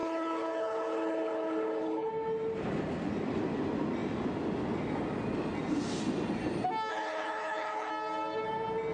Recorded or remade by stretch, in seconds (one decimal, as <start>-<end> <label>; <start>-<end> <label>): 0.0-2.1 remade; 2.1-6.9 recorded; 6.9-7.9 remade; 7.9-8.9 recorded